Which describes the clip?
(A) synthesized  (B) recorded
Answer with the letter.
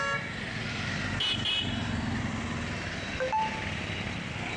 B